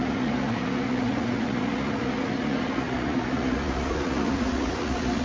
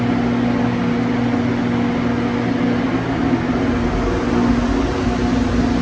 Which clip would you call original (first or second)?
second